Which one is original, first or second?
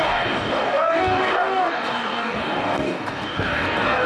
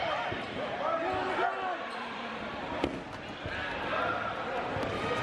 second